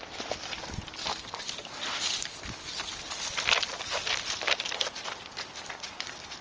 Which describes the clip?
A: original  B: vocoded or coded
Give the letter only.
A